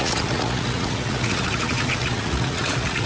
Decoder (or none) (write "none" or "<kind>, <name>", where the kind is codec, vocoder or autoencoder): vocoder, Vocos